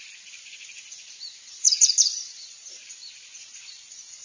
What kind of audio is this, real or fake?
fake